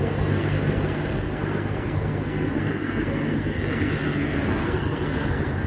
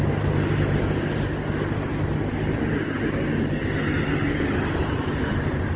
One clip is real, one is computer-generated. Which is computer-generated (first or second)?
first